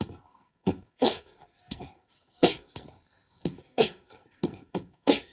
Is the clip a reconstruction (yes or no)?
yes